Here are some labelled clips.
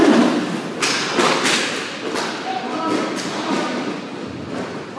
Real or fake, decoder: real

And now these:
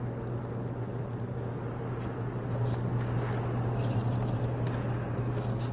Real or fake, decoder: real